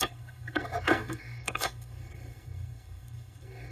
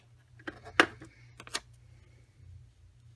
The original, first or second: second